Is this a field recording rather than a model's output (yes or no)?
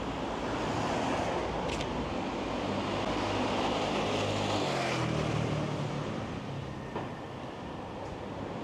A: yes